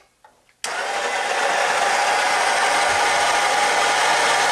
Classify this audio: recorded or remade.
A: recorded